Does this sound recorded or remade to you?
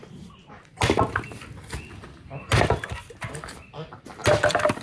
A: recorded